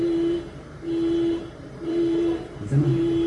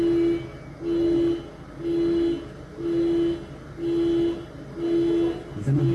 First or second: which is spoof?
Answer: first